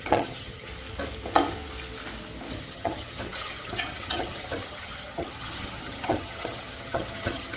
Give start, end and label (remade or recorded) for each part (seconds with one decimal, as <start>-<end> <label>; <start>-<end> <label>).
0.0-0.7 remade; 0.7-2.6 recorded; 2.6-7.6 remade